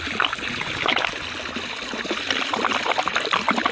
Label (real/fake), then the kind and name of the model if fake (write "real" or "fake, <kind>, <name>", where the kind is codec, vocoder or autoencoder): fake, vocoder, BigVGAN v2